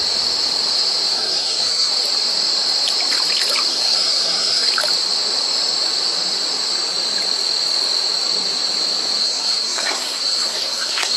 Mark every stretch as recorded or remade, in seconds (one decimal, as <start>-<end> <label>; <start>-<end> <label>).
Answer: 0.0-1.1 recorded; 1.1-1.9 remade; 1.9-3.7 recorded; 3.7-4.7 remade; 4.7-9.2 recorded; 9.2-11.2 remade

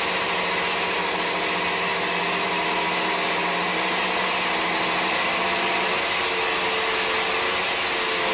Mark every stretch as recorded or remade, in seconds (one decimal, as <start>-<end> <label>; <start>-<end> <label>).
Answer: 0.0-8.3 recorded